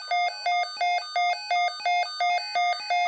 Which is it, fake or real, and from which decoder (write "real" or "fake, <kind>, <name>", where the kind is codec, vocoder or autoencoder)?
real